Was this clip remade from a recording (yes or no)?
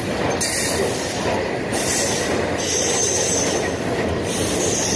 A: no